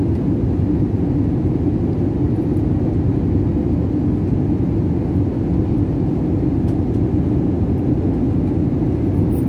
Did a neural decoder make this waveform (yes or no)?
no